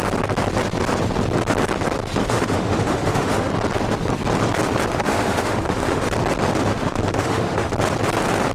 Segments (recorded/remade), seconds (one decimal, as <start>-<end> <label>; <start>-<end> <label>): 0.0-2.2 recorded; 2.2-3.5 remade; 3.5-4.9 recorded; 4.9-6.1 remade; 6.1-6.7 recorded; 6.7-7.7 remade; 7.7-8.5 recorded